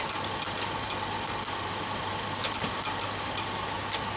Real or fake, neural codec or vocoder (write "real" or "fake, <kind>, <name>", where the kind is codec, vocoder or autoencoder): real